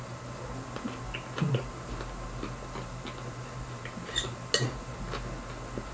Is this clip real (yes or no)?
yes